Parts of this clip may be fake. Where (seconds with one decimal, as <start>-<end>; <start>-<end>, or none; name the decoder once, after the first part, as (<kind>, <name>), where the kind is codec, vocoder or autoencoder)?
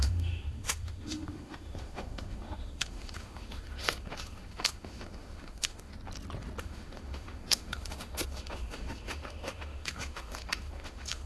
0.0-5.9 (autoencoder, DAC-VAE); 6.6-11.3